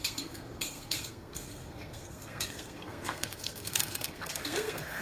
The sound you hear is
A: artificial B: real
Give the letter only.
A